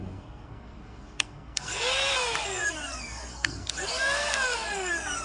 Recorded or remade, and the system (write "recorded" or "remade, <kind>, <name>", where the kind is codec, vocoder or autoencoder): remade, codec, SNAC